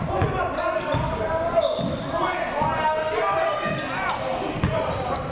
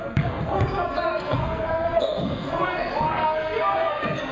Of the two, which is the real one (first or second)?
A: first